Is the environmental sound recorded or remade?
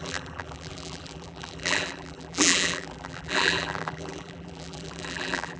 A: remade